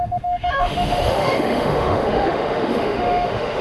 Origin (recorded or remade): remade